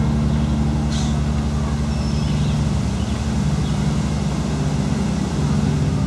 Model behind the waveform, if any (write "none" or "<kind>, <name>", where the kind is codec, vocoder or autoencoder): none